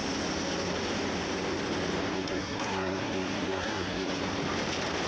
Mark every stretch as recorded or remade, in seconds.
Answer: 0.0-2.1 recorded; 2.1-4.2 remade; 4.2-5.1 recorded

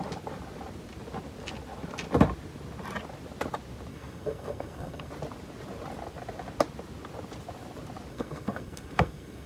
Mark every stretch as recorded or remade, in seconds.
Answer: 0.0-3.9 recorded; 3.9-5.1 remade; 5.1-8.1 recorded; 8.1-9.5 remade

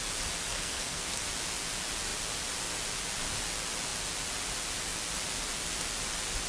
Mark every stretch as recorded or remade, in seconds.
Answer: 0.0-0.5 recorded; 0.5-1.2 remade; 1.2-6.5 recorded

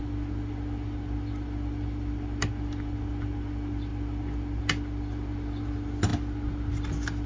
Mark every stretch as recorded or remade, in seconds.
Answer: 0.0-7.3 recorded

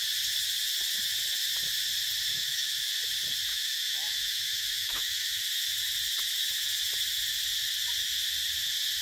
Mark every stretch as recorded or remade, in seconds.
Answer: 0.0-2.3 recorded; 2.3-2.9 remade; 2.9-3.5 recorded; 3.5-5.4 remade; 5.4-9.0 recorded

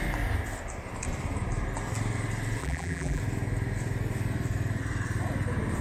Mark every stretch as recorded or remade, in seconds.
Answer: 0.0-2.6 recorded; 2.6-3.2 remade; 3.2-5.8 recorded

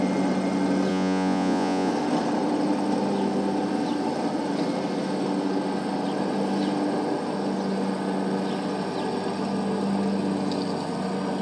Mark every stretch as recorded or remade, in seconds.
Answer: 0.0-0.9 recorded; 0.9-1.9 remade; 1.9-11.4 recorded

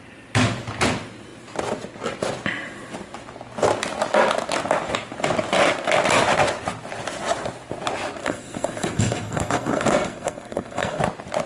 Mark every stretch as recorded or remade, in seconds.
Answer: 0.0-8.2 recorded; 8.2-11.0 remade; 11.0-11.5 recorded